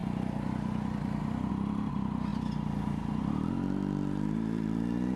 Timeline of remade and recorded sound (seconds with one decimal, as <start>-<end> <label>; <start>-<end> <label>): 0.0-2.3 recorded; 2.3-5.2 remade